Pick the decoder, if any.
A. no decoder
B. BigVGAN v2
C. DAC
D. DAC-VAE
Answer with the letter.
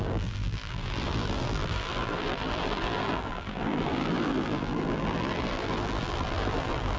B